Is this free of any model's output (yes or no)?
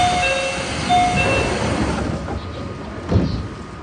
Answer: yes